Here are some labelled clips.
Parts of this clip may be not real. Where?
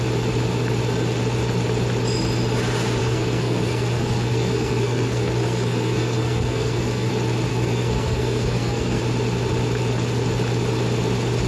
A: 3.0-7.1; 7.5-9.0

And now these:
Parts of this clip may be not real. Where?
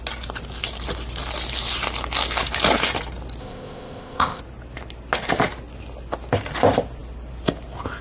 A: 3.4-4.4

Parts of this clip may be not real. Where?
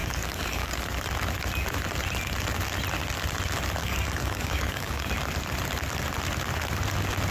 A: 0.0-0.8; 3.8-5.1